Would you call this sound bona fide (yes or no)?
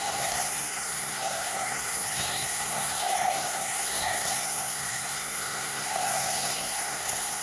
no